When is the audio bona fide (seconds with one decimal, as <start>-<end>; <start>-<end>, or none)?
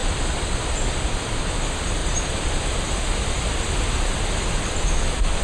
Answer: 0.0-5.4